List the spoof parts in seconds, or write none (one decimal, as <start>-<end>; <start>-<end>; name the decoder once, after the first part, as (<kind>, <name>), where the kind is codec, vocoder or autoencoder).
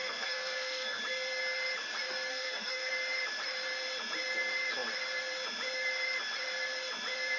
0.0-1.0 (codec, SNAC); 2.3-2.9